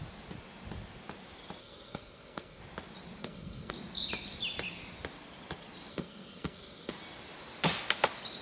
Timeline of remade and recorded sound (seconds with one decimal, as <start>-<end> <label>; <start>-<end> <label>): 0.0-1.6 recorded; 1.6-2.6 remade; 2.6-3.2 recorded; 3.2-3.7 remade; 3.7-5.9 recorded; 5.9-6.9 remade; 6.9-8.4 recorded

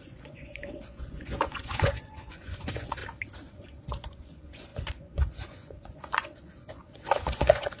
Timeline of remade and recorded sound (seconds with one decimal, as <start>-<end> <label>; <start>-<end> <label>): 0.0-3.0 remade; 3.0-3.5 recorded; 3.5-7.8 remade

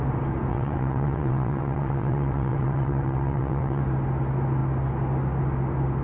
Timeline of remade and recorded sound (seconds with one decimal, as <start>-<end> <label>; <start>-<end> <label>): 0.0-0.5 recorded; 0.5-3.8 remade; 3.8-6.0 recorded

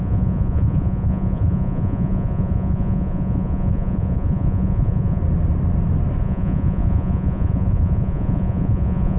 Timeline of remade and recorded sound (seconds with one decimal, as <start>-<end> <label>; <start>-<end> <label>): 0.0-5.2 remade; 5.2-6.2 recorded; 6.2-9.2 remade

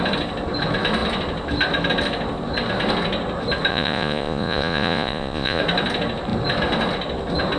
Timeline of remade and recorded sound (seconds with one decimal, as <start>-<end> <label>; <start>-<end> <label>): 0.0-3.7 recorded; 3.7-5.6 remade; 5.6-7.6 recorded

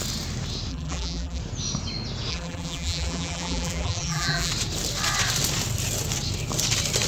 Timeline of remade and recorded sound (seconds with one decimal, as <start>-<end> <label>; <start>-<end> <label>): 0.0-0.7 recorded; 0.7-1.4 remade; 1.4-2.3 recorded; 2.3-4.5 remade; 4.5-7.1 recorded

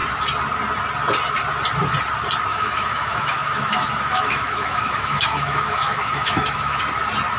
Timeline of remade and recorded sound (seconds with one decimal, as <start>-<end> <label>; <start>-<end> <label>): 0.0-2.5 recorded; 2.5-6.8 remade; 6.8-7.4 recorded

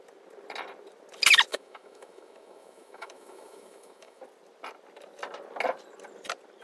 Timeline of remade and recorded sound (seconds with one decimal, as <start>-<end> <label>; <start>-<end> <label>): 0.0-1.5 recorded; 1.5-4.2 remade; 4.2-6.6 recorded